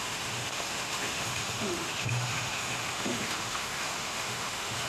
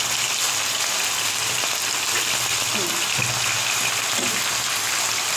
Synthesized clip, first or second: first